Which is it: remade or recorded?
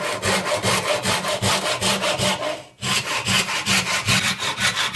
recorded